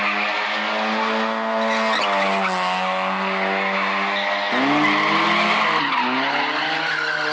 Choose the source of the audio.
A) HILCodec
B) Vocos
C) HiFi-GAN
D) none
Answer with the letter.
D